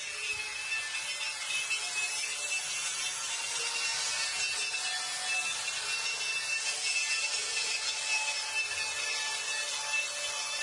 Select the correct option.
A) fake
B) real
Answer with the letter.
B